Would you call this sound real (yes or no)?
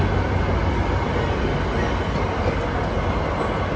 yes